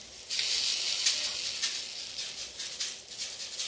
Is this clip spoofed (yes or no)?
no